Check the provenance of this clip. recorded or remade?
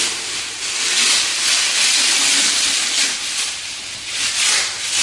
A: recorded